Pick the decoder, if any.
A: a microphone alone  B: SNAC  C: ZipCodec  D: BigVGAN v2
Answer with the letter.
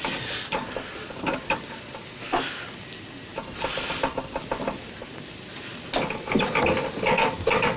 A